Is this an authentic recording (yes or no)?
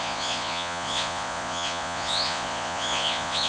no